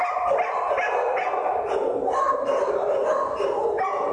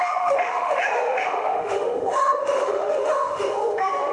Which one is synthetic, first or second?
second